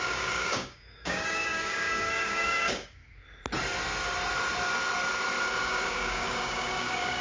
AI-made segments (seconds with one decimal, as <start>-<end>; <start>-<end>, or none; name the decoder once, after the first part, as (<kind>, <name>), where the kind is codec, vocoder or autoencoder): 0.0-3.0 (codec, DAC); 5.6-7.2